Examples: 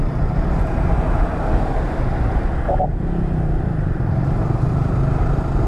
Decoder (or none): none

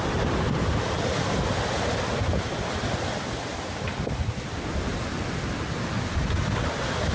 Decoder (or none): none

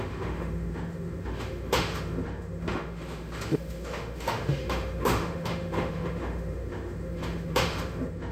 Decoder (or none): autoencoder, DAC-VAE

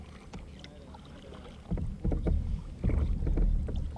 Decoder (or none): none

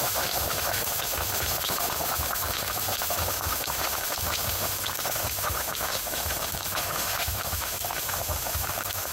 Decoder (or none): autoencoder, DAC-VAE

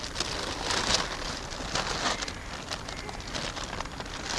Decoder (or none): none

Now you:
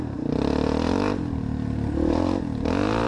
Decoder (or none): none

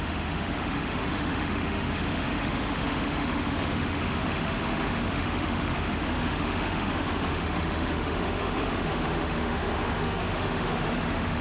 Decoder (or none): autoencoder, DAC-VAE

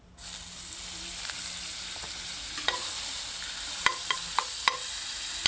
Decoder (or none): none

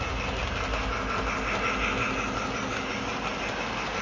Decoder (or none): none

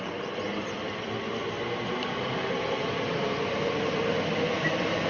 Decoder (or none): none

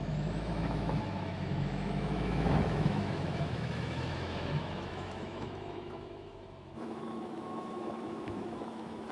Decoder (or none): autoencoder, DAC-VAE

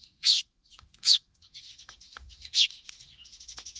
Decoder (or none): autoencoder, DAC-VAE